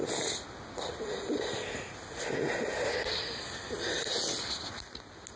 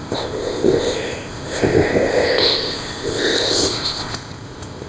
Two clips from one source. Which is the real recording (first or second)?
first